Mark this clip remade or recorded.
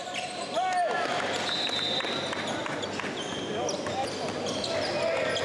recorded